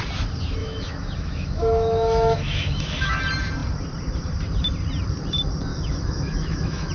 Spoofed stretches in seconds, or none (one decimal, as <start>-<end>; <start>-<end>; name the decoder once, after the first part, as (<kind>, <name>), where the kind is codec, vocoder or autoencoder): 0.6-3.2 (autoencoder, DAC-VAE); 5.7-6.9